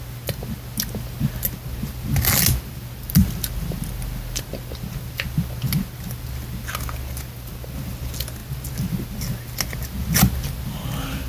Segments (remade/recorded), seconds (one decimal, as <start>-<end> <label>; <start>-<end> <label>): 0.0-11.3 recorded